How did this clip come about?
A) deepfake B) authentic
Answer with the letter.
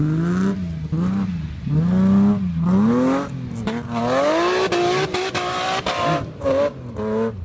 B